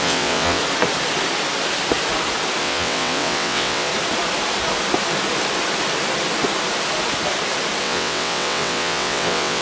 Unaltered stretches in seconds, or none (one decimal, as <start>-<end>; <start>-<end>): 0.6-2.6; 3.9-7.8